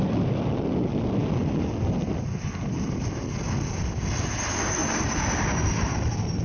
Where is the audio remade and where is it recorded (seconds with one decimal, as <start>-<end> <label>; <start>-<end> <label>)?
0.0-6.4 recorded